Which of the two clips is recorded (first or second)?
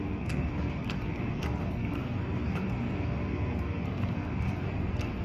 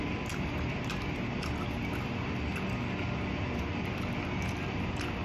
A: second